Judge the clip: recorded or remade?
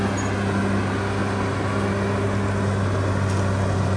recorded